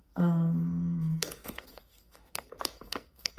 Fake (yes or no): yes